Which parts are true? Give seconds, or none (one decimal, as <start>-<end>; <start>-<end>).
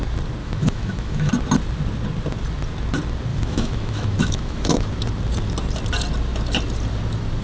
0.0-0.4; 1.3-3.3; 4.9-7.4